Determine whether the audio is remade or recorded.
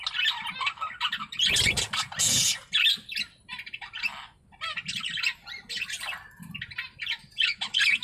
recorded